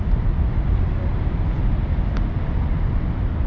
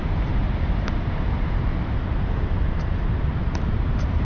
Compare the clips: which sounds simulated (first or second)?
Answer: second